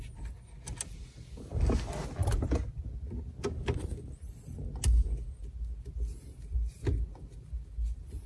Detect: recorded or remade recorded